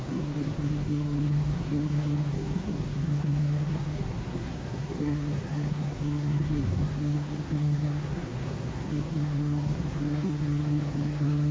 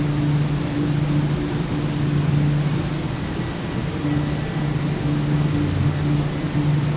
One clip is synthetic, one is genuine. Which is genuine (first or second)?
second